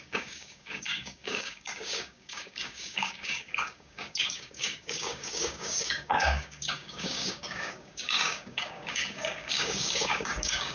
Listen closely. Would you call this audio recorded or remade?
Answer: remade